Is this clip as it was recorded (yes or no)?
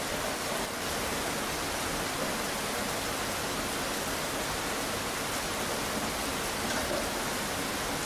yes